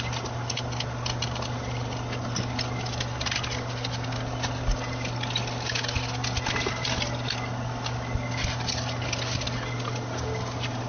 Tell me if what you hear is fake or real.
real